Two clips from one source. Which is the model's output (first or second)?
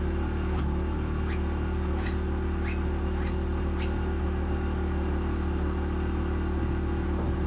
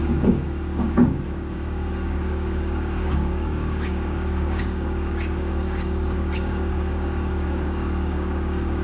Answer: second